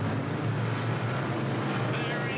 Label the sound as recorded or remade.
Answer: recorded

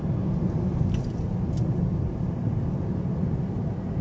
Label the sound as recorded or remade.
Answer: recorded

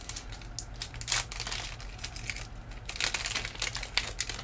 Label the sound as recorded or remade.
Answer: recorded